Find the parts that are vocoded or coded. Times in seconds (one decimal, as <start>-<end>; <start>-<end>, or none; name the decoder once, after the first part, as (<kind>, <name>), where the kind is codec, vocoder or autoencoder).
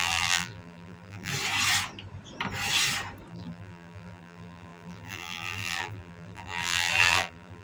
0.0-1.3 (vocoder, BigVGAN v2); 3.3-7.6